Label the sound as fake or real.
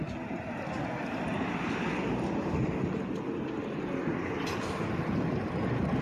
real